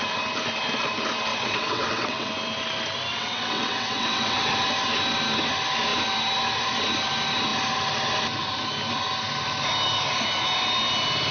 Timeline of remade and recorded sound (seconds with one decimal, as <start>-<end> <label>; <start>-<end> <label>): 0.0-1.3 recorded; 1.3-2.3 remade; 2.3-3.1 recorded; 3.1-4.5 remade; 4.5-11.3 recorded